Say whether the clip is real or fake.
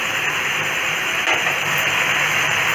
fake